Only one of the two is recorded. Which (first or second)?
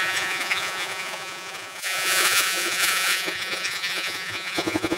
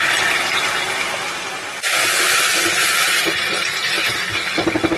second